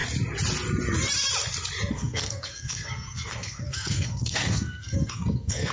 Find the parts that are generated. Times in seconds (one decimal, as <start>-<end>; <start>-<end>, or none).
1.9-5.7